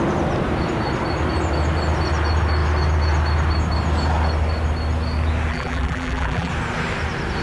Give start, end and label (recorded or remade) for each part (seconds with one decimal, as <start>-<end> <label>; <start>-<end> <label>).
0.0-5.5 recorded; 5.5-6.5 remade; 6.5-7.4 recorded